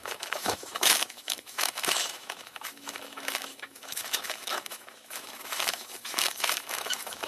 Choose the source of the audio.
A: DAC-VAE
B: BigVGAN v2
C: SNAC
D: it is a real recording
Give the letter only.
A